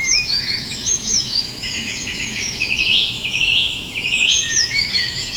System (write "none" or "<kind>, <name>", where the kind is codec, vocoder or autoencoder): autoencoder, DAC-VAE